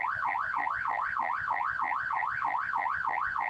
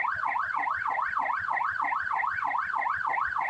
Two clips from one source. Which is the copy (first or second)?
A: first